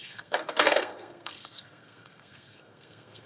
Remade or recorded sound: remade